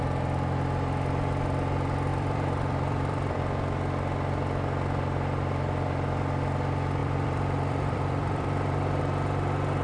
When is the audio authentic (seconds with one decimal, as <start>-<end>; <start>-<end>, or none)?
0.0-2.1; 3.4-7.0; 9.0-9.8